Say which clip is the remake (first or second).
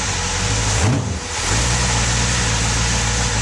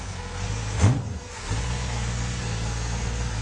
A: second